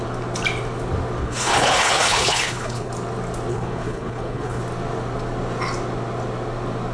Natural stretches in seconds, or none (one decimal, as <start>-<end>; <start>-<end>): 0.0-1.2; 2.9-3.5; 4.6-6.9